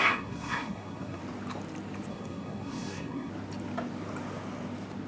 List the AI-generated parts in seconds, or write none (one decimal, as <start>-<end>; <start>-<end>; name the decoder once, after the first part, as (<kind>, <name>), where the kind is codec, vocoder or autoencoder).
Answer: 0.0-1.2 (codec, SNAC); 2.1-3.3